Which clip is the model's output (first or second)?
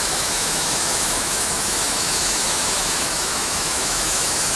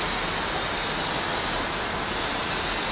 first